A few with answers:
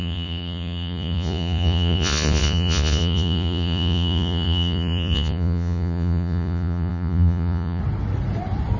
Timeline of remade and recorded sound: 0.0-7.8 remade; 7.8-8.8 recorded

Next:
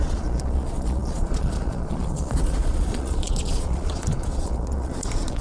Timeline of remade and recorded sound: 0.0-5.4 remade

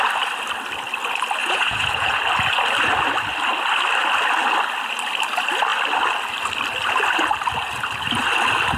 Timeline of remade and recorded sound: 0.0-1.4 recorded; 1.4-2.2 remade; 2.2-8.8 recorded

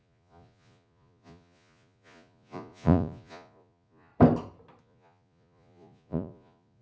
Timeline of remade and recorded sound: 0.0-4.1 remade; 4.1-4.8 recorded; 4.8-6.8 remade

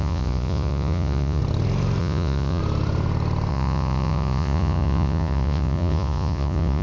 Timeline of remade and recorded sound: 0.0-1.4 remade; 1.4-2.0 recorded; 2.0-2.6 remade; 2.6-3.5 recorded; 3.5-6.8 remade

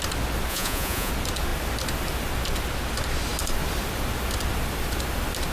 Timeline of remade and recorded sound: 0.0-0.5 recorded; 0.5-1.1 remade; 1.1-5.5 recorded

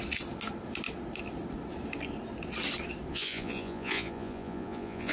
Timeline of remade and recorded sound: 0.0-3.1 recorded; 3.1-5.1 remade

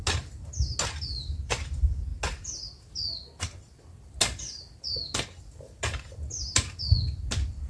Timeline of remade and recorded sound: 0.0-7.7 recorded